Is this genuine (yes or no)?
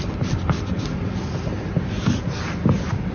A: yes